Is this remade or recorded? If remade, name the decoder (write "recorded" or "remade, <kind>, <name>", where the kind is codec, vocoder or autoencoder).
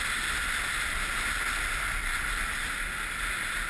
recorded